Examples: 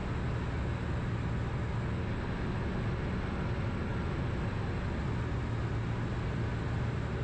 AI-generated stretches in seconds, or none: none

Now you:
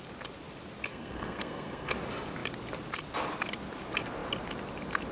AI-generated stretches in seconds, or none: 0.9-1.9 (codec, SNAC)

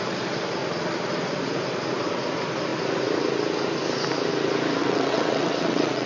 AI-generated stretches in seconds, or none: 4.8-6.1 (vocoder, WaveNeXt)

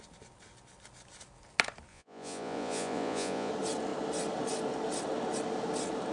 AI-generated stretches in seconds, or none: 1.9-3.5 (vocoder, Vocos)

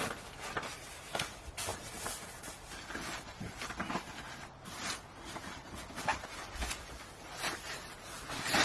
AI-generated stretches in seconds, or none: 1.7-3.7 (vocoder, BigVGAN v2)

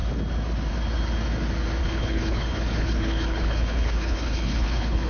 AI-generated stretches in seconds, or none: 1.8-5.1 (codec, HILCodec)

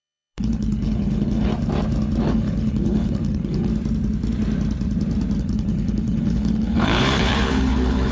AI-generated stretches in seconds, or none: 0.0-1.5 (codec, HILCodec); 2.2-3.7; 5.4-8.1

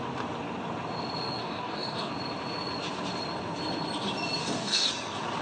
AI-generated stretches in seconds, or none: 1.4-2.1 (codec, DAC); 4.4-4.9